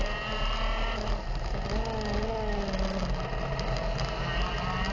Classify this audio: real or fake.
real